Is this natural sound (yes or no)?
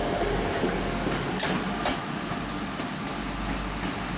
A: yes